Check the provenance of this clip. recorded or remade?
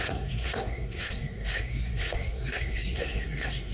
remade